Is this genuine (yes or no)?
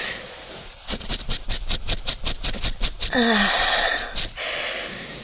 yes